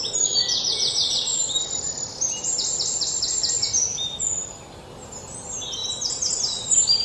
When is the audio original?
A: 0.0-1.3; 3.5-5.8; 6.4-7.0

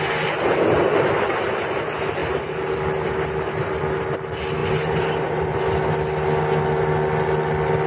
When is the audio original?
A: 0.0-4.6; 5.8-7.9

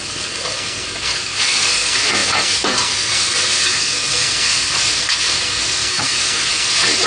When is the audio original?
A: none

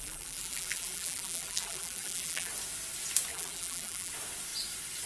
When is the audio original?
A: 2.5-3.3; 4.1-5.1